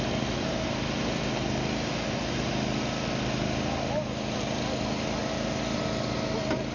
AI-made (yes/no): no